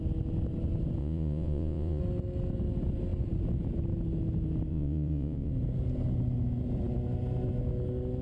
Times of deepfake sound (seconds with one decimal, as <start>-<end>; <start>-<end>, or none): 1.0-2.0; 4.7-5.5